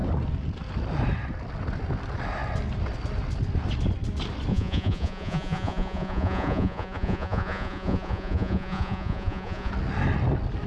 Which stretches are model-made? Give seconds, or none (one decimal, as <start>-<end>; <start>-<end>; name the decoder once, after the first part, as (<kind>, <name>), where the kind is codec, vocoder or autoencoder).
4.5-9.7 (vocoder, Vocos)